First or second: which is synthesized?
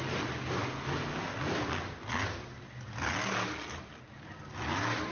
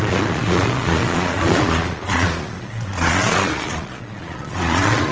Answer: second